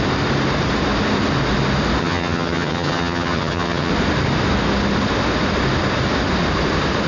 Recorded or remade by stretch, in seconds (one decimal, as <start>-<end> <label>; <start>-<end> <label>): 0.0-2.0 recorded; 2.0-3.9 remade; 3.9-7.1 recorded

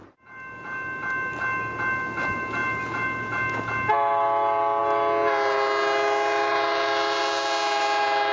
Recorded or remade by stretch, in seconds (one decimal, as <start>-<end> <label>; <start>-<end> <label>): 0.0-8.3 recorded

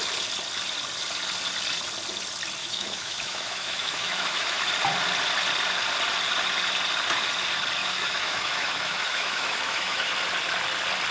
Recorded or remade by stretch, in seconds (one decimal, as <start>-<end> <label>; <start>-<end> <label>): 0.0-2.6 recorded; 2.6-4.6 remade; 4.6-7.8 recorded; 7.8-10.1 remade; 10.1-11.1 recorded

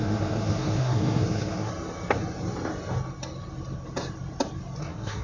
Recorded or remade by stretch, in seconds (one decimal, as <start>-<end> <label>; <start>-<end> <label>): 0.0-1.7 remade; 1.7-4.8 recorded; 4.8-5.2 remade

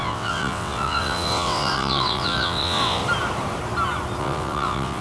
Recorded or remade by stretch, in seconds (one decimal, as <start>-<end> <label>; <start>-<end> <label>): 0.0-3.0 remade; 3.0-4.2 recorded; 4.2-5.0 remade

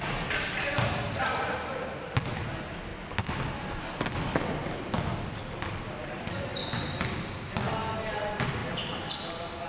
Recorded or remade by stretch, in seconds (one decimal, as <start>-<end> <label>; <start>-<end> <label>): 0.0-9.7 recorded

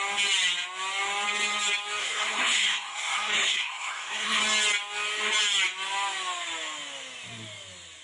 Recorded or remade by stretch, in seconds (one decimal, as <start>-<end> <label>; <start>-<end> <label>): 0.0-2.0 recorded; 2.0-4.4 remade; 4.4-8.0 recorded